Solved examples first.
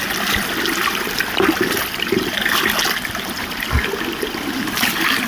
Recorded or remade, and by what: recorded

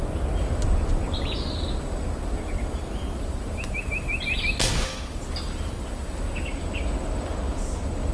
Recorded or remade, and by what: recorded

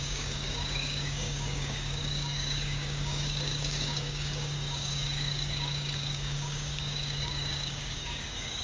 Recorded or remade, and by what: remade, codec, DAC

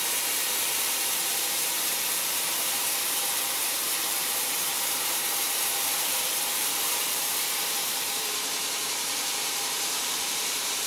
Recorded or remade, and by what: remade, vocoder, BigVGAN v2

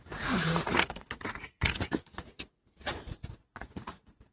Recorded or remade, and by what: remade, vocoder, Vocos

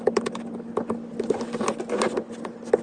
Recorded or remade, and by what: recorded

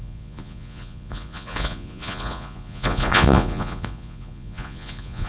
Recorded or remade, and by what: remade, vocoder, Vocos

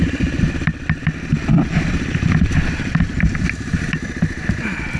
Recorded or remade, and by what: recorded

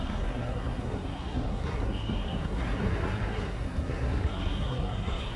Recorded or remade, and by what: remade, codec, SNAC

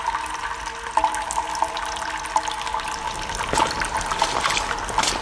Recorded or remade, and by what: recorded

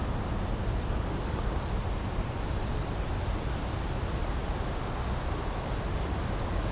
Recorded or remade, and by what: recorded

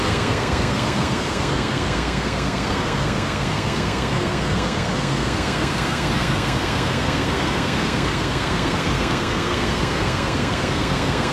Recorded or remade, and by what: remade, codec, SNAC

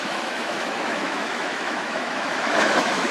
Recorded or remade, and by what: remade, autoencoder, DAC-VAE